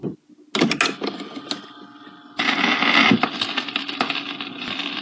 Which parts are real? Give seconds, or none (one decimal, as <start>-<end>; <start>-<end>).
0.0-5.0